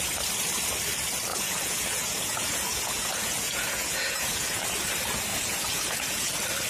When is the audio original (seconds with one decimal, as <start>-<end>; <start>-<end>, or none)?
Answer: 0.0-1.3; 4.4-5.3; 6.3-6.7